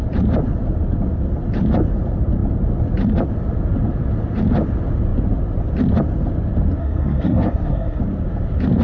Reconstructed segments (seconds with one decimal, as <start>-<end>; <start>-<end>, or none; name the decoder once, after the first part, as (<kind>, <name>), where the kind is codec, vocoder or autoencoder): 6.8-8.0 (codec, SNAC)